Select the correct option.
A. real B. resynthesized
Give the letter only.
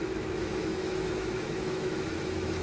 B